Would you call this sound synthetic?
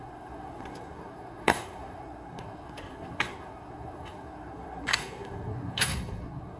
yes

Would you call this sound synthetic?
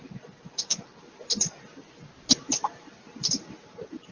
yes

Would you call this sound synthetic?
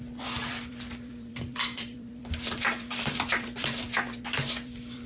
yes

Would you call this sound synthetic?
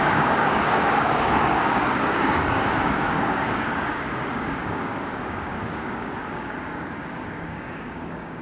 yes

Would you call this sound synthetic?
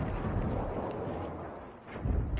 no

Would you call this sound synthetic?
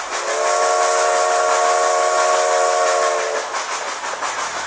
no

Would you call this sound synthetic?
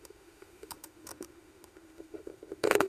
yes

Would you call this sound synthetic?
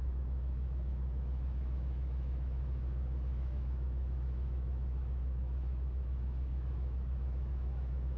yes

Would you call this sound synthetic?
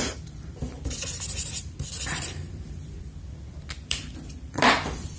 yes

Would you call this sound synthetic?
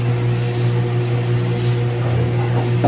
no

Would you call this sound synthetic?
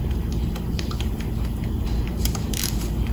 yes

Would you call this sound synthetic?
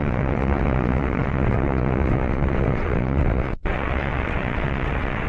yes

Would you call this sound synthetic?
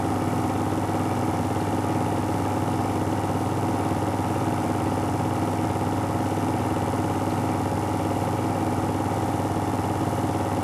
yes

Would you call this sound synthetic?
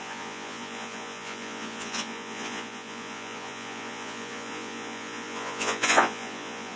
yes